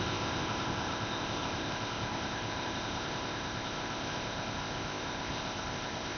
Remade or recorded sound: remade